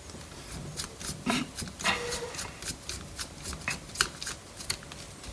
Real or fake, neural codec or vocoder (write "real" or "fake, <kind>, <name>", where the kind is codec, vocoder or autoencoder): real